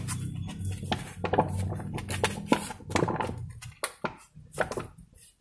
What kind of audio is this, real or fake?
real